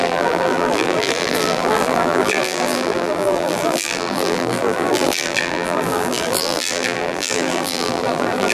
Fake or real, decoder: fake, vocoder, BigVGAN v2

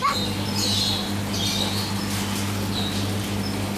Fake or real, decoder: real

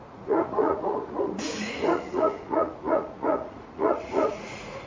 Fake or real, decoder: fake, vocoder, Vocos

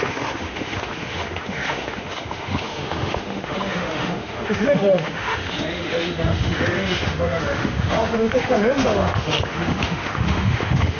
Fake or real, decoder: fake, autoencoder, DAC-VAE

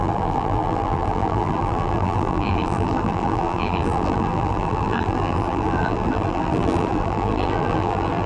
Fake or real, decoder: fake, vocoder, BigVGAN v2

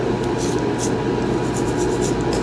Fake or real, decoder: real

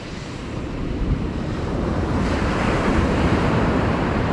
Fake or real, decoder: fake, vocoder, BigVGAN v2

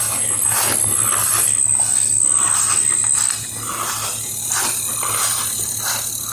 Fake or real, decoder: real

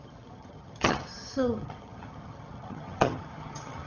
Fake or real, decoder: fake, vocoder, HiFi-GAN